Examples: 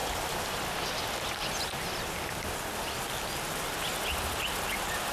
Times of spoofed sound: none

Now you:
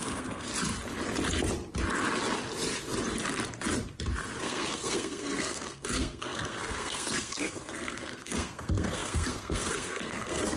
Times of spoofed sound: 0.0-0.5; 4.4-10.6

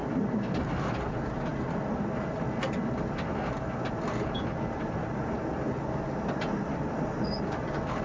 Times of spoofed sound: none